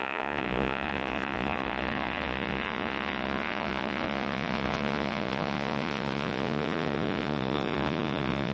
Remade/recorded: remade